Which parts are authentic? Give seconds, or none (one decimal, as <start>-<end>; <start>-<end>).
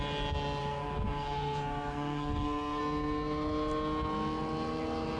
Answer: 0.0-0.6; 2.8-5.2